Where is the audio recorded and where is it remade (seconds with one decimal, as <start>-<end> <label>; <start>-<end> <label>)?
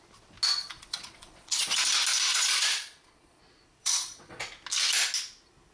0.0-0.6 recorded; 0.6-1.7 remade; 1.7-2.3 recorded; 2.3-3.4 remade; 3.4-3.8 recorded; 3.8-4.4 remade; 4.4-5.7 recorded